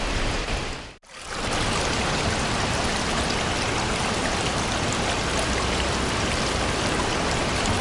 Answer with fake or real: real